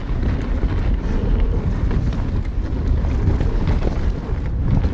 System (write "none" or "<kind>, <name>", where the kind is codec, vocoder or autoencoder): none